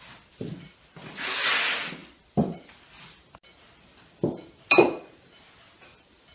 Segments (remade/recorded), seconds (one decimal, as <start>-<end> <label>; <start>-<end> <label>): 0.0-6.3 recorded